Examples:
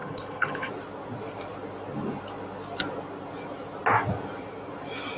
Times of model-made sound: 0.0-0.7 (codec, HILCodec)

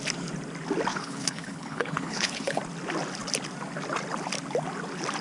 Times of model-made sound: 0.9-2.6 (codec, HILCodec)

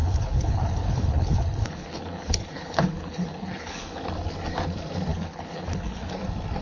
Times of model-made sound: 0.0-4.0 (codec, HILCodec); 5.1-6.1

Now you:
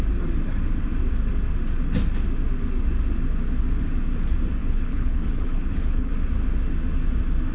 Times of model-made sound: 4.6-6.1 (codec, HILCodec)

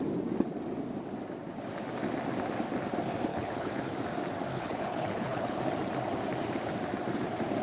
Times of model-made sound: 3.3-3.9 (codec, HILCodec); 4.5-5.6

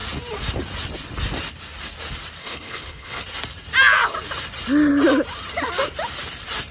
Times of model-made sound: 2.4-3.2 (codec, HILCodec)